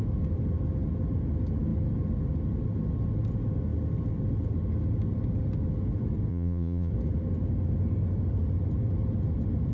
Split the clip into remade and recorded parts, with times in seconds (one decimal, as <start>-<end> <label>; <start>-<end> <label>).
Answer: 0.0-6.3 recorded; 6.3-6.9 remade; 6.9-9.7 recorded

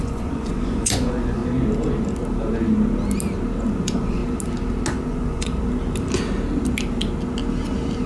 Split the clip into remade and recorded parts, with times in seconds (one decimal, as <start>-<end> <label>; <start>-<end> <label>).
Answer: 0.0-1.4 remade; 1.4-3.7 recorded; 3.7-4.2 remade; 4.2-5.0 recorded; 5.0-5.5 remade; 5.5-8.1 recorded

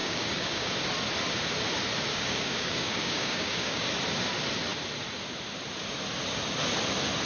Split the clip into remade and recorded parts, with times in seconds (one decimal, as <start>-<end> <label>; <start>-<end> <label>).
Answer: 0.0-0.7 remade; 0.7-2.1 recorded; 2.1-3.9 remade; 3.9-7.3 recorded

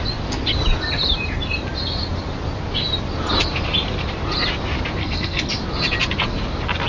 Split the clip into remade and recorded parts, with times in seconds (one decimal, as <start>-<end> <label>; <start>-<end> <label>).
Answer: 0.0-5.0 recorded; 5.0-5.5 remade; 5.5-6.9 recorded

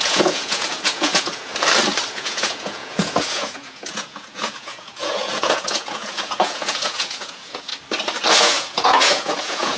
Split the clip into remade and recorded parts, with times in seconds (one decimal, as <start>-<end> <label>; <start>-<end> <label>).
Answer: 0.0-1.5 remade; 1.5-2.1 recorded; 2.1-7.7 remade; 7.7-8.4 recorded; 8.4-9.8 remade

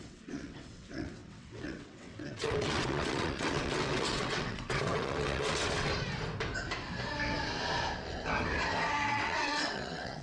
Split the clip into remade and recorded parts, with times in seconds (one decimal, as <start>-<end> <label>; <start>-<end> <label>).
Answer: 0.0-5.9 remade; 5.9-9.1 recorded; 9.1-10.2 remade